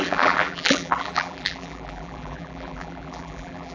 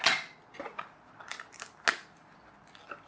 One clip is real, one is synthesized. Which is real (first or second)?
second